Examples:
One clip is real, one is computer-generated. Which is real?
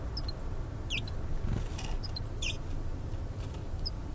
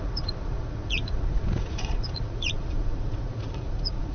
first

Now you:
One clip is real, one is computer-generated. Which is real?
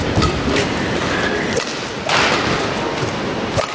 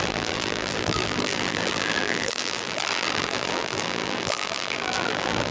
first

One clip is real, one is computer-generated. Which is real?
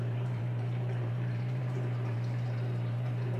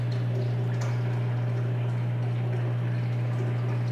second